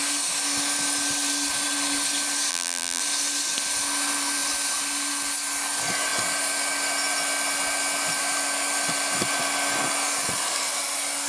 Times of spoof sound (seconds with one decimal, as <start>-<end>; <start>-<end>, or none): 2.5-3.0